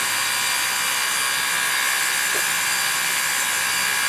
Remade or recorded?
recorded